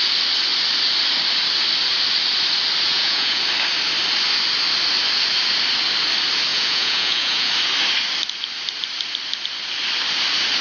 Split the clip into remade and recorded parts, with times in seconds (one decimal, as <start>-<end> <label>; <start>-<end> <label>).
0.0-2.9 recorded; 2.9-3.4 remade; 3.4-6.5 recorded; 6.5-7.5 remade; 7.5-10.6 recorded

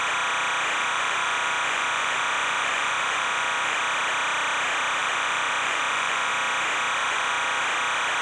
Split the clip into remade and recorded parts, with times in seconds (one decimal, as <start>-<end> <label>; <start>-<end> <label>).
0.0-0.8 recorded; 0.8-3.8 remade; 3.8-5.0 recorded; 5.0-6.3 remade; 6.3-7.0 recorded; 7.0-7.6 remade; 7.6-8.2 recorded

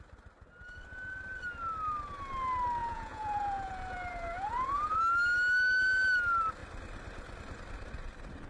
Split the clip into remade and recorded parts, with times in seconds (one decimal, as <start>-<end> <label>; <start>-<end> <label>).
0.0-2.8 recorded; 2.8-5.0 remade; 5.0-8.5 recorded

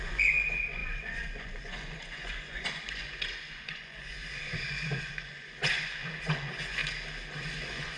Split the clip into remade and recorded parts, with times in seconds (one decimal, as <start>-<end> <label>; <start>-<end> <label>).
0.0-6.8 remade; 6.8-7.4 recorded; 7.4-8.0 remade

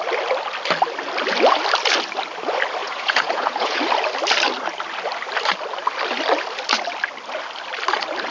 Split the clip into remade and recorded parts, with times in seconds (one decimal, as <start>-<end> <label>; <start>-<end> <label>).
0.0-2.8 recorded; 2.8-3.8 remade; 3.8-8.3 recorded